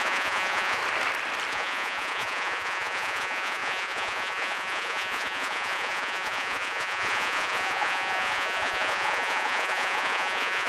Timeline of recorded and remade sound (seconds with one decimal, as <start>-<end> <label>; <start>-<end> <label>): 0.0-0.8 remade; 0.8-1.5 recorded; 1.5-10.7 remade